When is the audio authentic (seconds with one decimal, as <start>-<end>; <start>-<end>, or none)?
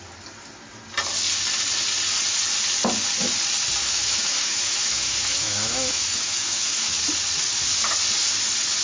0.0-3.8; 7.0-8.8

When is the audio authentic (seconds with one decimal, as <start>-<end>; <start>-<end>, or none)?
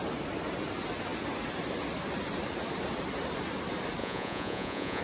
0.0-4.0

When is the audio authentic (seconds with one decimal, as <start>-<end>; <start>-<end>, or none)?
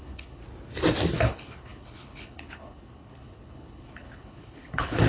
0.4-1.2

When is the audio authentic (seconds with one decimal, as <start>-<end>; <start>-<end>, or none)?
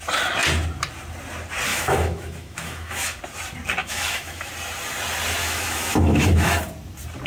0.0-1.7; 3.2-3.8; 4.5-5.4; 6.5-7.3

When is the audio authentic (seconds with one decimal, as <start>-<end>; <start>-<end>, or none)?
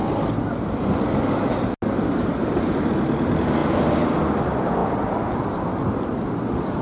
0.0-6.8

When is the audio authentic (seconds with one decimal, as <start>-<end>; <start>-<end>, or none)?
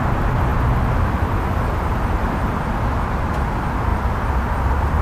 0.0-5.0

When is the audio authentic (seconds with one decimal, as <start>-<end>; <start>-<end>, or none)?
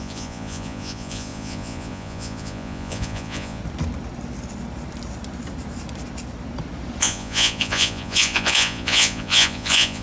3.6-7.0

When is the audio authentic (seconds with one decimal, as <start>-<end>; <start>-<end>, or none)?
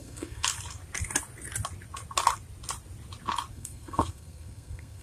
0.5-3.5